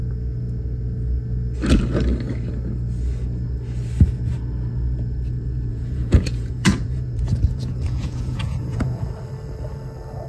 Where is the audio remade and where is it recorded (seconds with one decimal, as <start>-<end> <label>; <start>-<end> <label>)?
0.0-5.7 recorded; 5.7-9.1 remade; 9.1-10.3 recorded